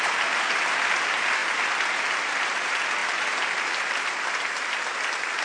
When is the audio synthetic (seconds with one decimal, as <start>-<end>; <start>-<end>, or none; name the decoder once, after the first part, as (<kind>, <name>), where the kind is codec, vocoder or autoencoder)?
none